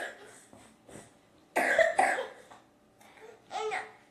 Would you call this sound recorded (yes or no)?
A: yes